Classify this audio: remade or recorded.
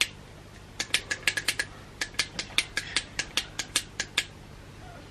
recorded